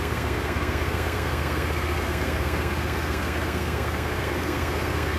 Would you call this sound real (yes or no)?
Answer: no